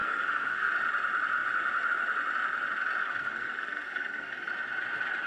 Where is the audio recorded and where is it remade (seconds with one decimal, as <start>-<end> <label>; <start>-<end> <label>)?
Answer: 0.0-0.7 remade; 0.7-3.0 recorded; 3.0-4.5 remade; 4.5-5.3 recorded